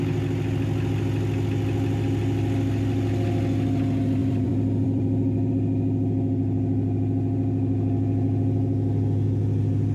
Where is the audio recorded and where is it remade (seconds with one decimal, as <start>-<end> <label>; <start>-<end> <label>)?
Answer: 0.0-4.2 recorded; 4.2-5.5 remade; 5.5-9.9 recorded